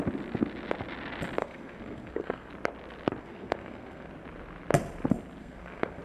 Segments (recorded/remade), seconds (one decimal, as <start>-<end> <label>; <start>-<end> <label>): 0.0-1.4 recorded; 1.4-2.5 remade; 2.5-3.2 recorded; 3.2-4.1 remade; 4.1-5.4 recorded; 5.4-6.0 remade